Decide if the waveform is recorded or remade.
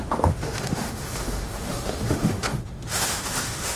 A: remade